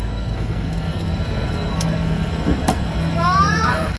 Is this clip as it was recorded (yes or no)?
no